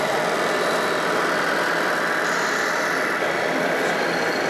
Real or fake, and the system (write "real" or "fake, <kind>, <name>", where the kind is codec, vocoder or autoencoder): real